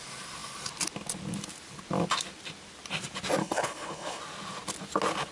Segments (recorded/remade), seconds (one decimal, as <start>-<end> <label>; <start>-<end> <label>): 0.0-3.4 recorded; 3.4-4.2 remade; 4.2-5.3 recorded